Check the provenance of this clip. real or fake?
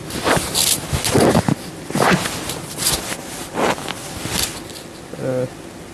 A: real